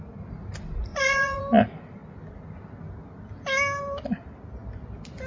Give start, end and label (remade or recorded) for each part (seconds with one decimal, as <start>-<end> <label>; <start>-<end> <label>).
0.0-0.9 recorded; 0.9-1.4 remade; 1.4-5.3 recorded